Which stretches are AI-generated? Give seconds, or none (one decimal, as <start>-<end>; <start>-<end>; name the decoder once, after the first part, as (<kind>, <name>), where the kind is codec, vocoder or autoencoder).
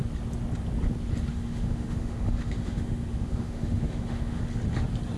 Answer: 1.3-4.4 (autoencoder, DAC-VAE)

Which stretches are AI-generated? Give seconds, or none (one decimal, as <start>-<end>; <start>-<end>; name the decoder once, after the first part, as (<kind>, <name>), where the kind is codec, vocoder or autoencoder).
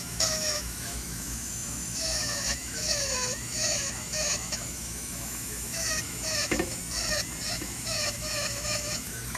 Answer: 0.0-6.8 (autoencoder, DAC-VAE); 7.5-9.4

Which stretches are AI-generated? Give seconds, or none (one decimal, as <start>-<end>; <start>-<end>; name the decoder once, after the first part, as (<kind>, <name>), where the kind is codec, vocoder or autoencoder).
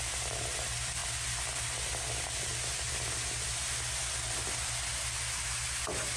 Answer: none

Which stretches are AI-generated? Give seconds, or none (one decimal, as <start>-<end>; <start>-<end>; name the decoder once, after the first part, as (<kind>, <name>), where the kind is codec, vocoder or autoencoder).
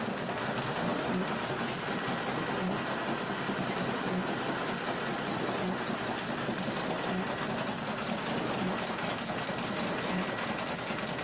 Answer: none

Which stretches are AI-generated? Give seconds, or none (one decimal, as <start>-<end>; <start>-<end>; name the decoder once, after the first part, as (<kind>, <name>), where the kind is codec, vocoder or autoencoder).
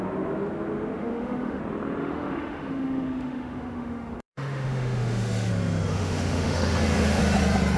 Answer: 1.0-1.6 (autoencoder, DAC-VAE); 2.0-5.5; 5.9-7.2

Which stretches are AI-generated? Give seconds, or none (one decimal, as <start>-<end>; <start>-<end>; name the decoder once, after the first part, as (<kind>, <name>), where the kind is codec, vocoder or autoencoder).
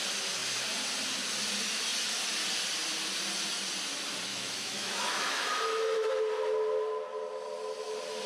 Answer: 4.3-6.1 (autoencoder, DAC-VAE)